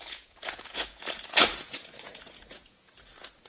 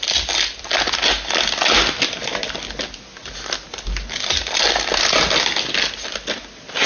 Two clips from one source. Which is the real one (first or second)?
second